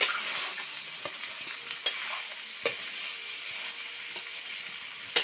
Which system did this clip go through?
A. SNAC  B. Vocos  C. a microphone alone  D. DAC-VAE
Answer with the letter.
C